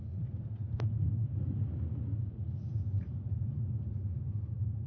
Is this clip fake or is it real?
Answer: real